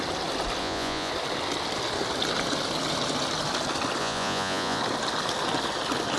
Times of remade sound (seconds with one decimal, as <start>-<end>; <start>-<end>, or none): 0.6-1.1; 4.0-4.8